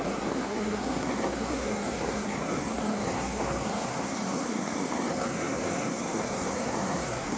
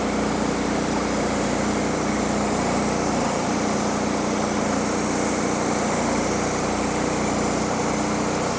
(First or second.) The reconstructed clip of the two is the first